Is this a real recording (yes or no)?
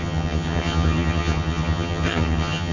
no